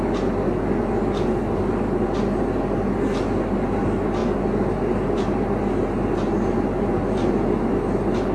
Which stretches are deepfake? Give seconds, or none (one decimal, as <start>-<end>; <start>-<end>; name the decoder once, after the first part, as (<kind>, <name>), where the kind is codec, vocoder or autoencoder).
none